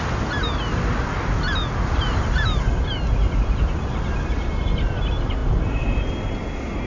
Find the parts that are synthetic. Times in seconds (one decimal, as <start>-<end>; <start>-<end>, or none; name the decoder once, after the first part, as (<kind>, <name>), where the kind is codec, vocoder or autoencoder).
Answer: none